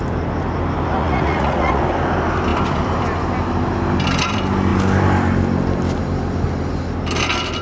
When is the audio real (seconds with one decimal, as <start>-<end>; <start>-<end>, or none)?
0.0-1.0; 1.8-7.6